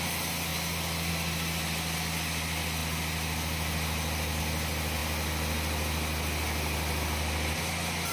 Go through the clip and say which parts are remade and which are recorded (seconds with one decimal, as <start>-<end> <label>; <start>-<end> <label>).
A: 0.0-8.1 recorded